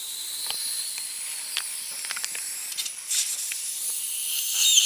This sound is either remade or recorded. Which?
recorded